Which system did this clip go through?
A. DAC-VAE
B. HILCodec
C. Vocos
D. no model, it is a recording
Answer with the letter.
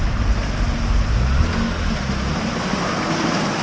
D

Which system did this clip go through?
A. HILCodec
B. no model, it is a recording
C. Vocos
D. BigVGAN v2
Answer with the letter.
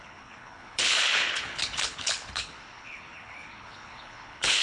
A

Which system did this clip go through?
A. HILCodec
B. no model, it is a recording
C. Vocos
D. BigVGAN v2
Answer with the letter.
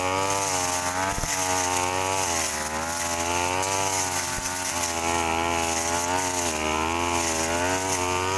B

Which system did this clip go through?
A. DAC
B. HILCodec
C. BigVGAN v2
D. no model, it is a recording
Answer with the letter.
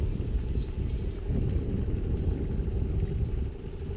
D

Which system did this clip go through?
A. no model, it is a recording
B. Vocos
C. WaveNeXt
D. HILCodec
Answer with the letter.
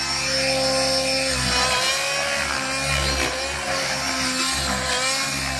A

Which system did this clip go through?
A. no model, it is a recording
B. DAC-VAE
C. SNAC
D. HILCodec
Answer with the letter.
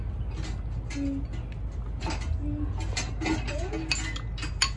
A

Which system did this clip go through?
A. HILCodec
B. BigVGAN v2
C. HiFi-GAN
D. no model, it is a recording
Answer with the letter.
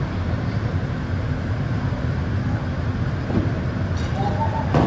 D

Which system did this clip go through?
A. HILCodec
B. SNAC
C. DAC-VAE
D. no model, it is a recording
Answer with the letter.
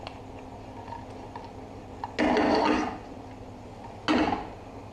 D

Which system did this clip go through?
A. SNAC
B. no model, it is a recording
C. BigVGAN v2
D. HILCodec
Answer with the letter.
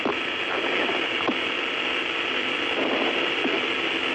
B